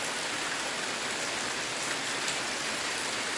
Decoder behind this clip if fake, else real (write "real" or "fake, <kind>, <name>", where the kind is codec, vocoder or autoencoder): real